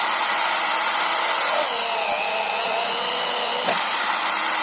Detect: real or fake real